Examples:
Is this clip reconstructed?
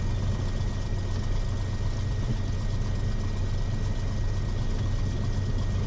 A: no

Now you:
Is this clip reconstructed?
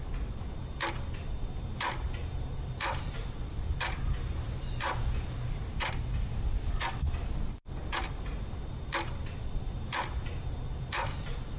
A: yes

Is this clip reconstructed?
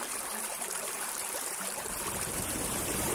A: yes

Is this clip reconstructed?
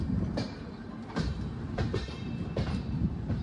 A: yes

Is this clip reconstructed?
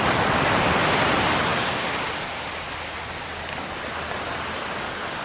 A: no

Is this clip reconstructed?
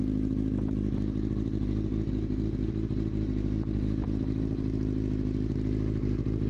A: no